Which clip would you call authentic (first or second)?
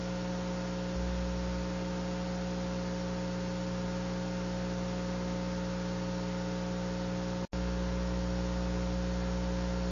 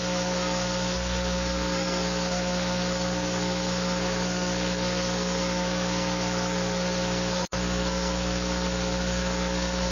first